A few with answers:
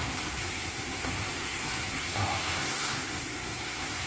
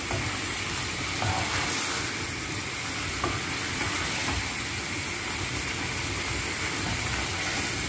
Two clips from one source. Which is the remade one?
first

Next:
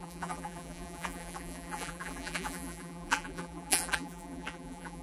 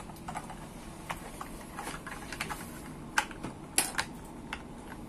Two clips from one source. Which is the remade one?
first